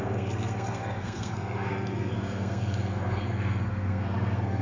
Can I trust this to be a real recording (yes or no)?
no